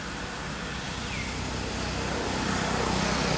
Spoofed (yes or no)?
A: no